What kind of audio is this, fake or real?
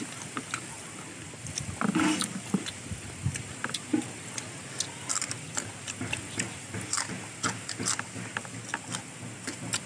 real